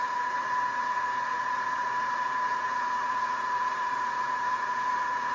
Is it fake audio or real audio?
fake